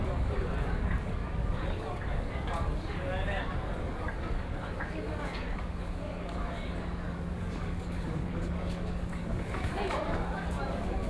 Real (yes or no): no